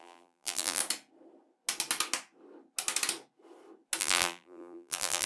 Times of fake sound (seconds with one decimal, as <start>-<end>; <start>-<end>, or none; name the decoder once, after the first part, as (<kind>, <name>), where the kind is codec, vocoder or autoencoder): 0.0-0.8 (vocoder, BigVGAN v2); 4.0-5.3